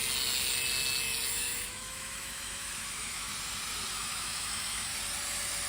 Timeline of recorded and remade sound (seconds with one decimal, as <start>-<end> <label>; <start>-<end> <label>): 0.0-1.3 recorded; 1.3-3.3 remade; 3.3-3.9 recorded; 3.9-4.9 remade; 4.9-5.7 recorded